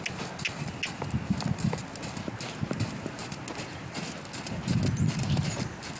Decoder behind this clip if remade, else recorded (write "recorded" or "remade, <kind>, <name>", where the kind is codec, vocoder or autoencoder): recorded